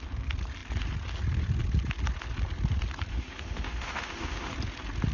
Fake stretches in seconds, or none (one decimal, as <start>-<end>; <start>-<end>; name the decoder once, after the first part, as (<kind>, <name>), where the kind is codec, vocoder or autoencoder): 3.1-4.5 (autoencoder, DAC-VAE)